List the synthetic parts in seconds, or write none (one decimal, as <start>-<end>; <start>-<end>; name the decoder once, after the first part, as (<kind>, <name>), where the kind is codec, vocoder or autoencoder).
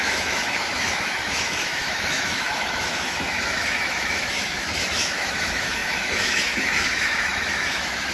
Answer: 0.0-8.1 (autoencoder, DAC-VAE)